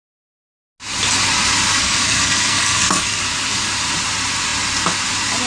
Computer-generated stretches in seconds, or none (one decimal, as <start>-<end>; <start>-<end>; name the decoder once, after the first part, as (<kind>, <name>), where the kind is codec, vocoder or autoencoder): 1.8-3.2 (codec, SNAC)